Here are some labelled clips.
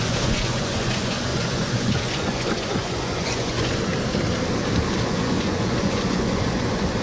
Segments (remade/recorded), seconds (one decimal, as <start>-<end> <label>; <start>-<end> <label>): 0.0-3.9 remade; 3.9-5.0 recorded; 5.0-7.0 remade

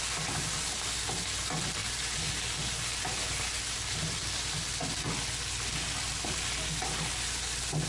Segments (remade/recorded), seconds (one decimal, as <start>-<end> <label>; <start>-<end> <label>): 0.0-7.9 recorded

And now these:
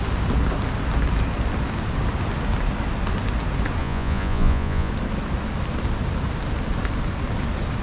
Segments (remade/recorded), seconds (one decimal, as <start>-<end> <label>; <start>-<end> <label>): 0.0-3.8 recorded; 3.8-4.9 remade; 4.9-7.8 recorded